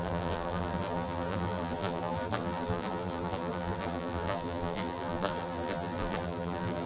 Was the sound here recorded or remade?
remade